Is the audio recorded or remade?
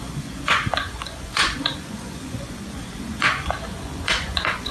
remade